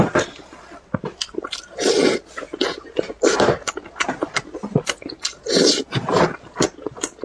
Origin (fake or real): real